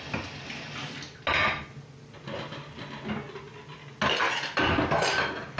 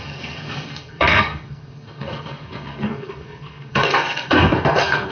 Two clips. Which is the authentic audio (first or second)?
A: first